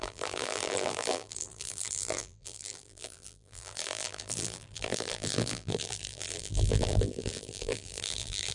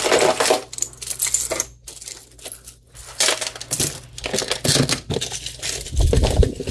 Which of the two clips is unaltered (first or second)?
second